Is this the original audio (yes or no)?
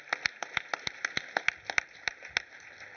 yes